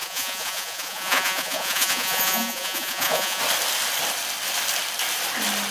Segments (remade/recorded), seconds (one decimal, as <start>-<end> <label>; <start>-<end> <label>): 0.0-3.4 remade; 3.4-5.7 recorded